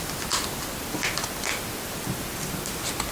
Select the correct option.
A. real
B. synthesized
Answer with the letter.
A